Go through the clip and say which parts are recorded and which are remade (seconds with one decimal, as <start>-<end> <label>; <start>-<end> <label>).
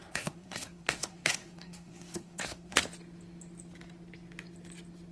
0.0-2.8 remade; 2.8-5.1 recorded